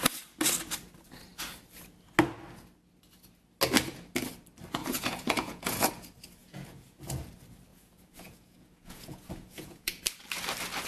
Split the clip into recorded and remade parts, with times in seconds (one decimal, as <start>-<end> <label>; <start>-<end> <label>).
0.0-4.8 recorded; 4.8-5.9 remade; 5.9-6.4 recorded; 6.4-7.3 remade; 7.3-7.7 recorded; 7.7-10.0 remade; 10.0-10.9 recorded